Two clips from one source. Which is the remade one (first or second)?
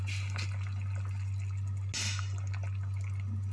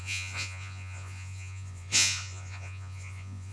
second